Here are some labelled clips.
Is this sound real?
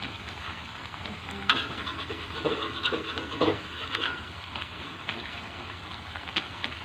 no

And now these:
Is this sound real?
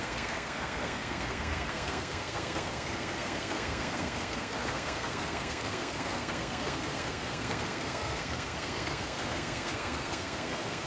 no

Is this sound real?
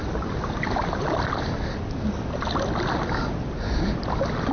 yes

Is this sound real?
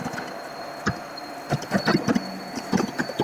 yes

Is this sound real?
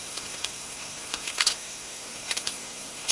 no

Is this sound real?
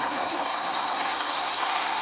no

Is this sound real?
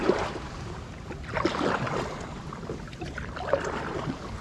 yes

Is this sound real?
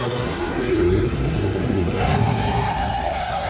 no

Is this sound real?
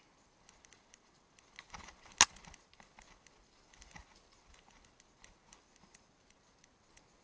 yes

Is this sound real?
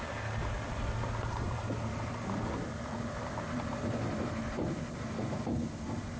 yes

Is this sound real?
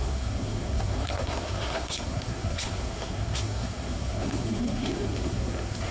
no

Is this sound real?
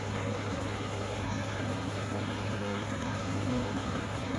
no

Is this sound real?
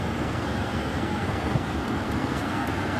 no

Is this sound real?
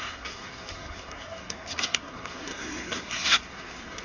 no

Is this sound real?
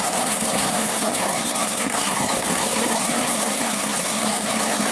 no